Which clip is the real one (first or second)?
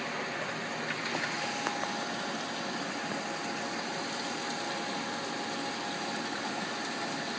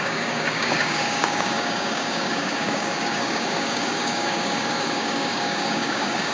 first